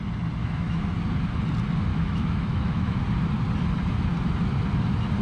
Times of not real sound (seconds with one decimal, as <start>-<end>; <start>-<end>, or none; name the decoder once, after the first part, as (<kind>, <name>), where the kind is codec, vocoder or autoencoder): 0.4-0.9 (autoencoder, DAC-VAE); 1.9-3.0

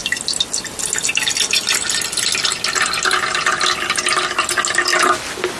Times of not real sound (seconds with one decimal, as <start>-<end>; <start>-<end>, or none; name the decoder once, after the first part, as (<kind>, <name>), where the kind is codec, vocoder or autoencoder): none